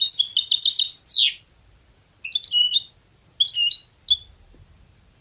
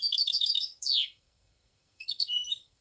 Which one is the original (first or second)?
first